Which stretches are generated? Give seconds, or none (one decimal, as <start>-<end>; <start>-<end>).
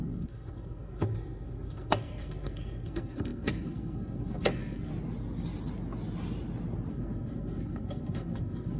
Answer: 0.0-4.9; 6.9-8.8